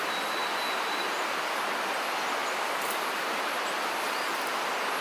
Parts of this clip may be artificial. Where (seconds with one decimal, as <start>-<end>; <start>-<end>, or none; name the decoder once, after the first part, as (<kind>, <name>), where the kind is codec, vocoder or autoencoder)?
0.4-1.6 (vocoder, BigVGAN v2)